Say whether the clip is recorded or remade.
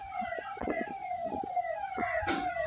remade